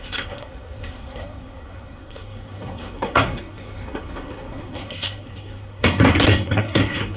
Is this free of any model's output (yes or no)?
no